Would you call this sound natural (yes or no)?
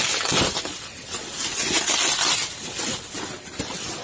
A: yes